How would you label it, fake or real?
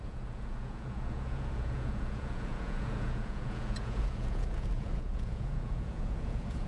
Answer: fake